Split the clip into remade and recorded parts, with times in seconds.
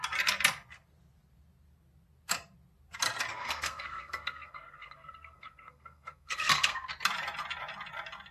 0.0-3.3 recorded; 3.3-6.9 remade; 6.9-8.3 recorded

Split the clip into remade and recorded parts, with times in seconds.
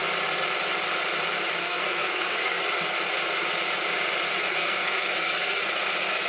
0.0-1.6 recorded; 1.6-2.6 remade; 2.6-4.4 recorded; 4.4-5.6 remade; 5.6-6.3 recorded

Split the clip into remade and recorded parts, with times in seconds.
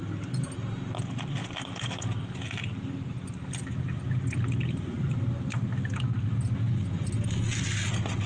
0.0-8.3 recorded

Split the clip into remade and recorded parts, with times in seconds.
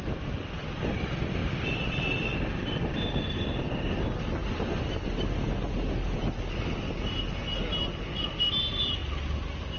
0.0-1.4 recorded; 1.4-2.8 remade; 2.8-9.8 recorded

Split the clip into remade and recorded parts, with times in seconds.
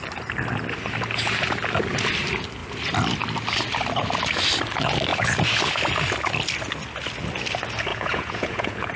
0.0-7.9 recorded; 7.9-9.0 remade